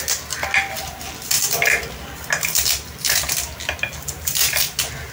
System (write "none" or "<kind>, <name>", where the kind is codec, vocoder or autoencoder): none